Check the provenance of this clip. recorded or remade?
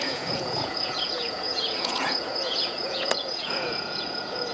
remade